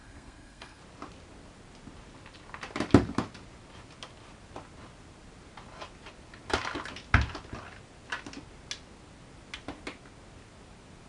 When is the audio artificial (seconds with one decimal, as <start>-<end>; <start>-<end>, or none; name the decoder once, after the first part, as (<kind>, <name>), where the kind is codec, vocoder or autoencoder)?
0.0-0.8 (codec, SNAC)